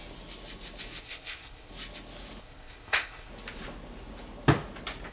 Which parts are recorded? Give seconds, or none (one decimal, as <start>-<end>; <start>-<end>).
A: 0.0-1.0; 1.7-2.4; 3.3-5.1